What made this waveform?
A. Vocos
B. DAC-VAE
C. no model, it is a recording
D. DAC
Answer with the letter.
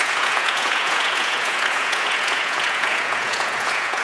A